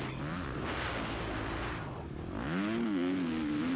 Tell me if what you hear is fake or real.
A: real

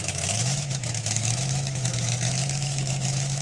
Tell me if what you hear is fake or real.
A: fake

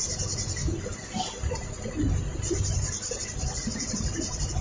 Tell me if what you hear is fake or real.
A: real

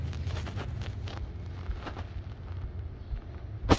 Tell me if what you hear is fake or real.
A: real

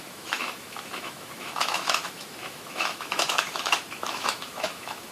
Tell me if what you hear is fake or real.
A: fake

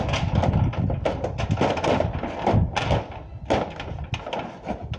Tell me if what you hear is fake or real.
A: real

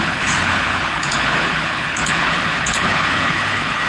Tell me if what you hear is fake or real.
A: fake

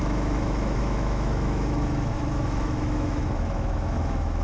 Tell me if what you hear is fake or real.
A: fake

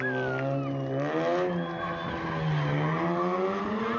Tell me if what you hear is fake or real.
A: real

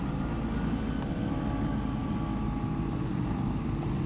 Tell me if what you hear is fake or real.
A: real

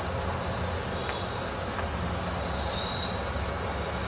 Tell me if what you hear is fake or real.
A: real